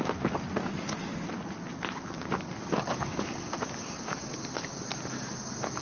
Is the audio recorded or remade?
recorded